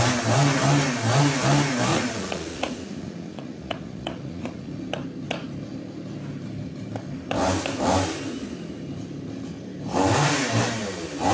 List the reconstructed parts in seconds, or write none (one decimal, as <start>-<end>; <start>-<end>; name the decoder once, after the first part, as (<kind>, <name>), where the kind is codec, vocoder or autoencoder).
1.9-4.7 (vocoder, Vocos)